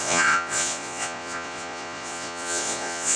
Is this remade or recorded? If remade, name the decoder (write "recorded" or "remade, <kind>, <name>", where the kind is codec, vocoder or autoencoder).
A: remade, vocoder, Vocos